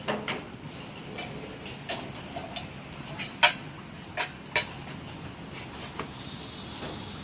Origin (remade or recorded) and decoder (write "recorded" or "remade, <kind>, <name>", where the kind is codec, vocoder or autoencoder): recorded